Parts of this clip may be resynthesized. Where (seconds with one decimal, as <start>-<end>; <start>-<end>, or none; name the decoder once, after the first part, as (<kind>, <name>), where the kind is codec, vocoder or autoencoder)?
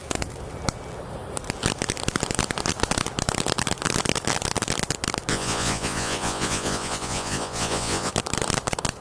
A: 5.3-8.1 (vocoder, Vocos)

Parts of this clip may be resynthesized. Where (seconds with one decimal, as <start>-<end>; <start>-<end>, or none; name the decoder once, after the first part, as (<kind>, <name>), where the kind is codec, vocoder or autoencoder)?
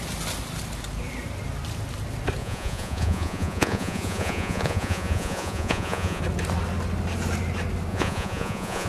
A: 2.4-6.2 (vocoder, Vocos); 7.9-8.9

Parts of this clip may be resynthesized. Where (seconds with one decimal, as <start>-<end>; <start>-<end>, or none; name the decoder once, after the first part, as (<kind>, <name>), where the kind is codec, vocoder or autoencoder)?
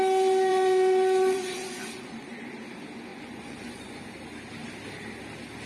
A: 0.5-2.5 (vocoder, Vocos); 3.1-4.1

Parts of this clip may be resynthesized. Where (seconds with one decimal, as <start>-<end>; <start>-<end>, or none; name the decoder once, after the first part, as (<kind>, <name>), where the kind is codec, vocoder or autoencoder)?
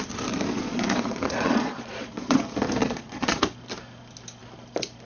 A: 0.6-2.4 (vocoder, Vocos); 2.8-3.4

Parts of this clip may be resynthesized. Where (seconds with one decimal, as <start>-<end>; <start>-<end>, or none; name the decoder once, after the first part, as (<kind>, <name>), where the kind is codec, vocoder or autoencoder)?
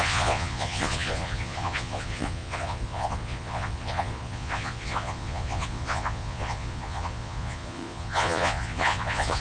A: 0.0-9.4 (vocoder, Vocos)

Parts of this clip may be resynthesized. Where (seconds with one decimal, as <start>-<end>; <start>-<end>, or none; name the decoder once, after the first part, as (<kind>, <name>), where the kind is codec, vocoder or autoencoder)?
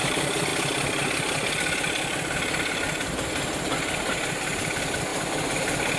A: none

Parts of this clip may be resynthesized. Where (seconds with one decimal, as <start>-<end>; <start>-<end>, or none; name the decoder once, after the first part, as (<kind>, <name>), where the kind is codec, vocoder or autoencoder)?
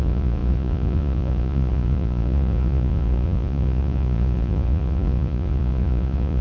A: 0.0-6.4 (vocoder, Vocos)